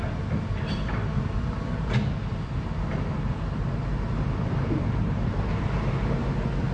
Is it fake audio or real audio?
real